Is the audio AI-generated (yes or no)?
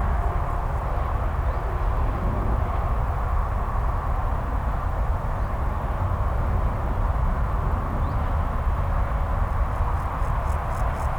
no